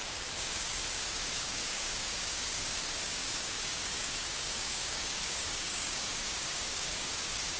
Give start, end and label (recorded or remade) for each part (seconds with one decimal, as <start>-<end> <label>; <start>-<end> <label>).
0.0-7.6 remade